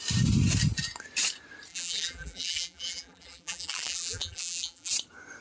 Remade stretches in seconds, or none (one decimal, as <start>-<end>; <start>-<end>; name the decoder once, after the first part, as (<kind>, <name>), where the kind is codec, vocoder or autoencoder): 1.7-4.9 (vocoder, BigVGAN v2)